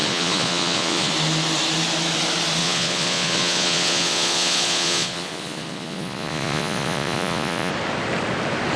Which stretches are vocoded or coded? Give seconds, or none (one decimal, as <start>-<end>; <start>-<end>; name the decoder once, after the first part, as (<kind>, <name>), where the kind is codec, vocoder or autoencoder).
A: 0.0-1.1 (vocoder, Vocos); 2.6-7.7